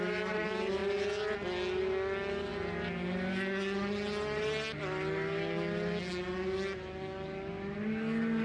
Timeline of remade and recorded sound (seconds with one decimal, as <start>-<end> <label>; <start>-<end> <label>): 0.0-8.4 recorded